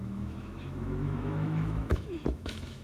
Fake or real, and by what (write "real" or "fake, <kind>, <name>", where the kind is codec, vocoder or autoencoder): fake, autoencoder, DAC-VAE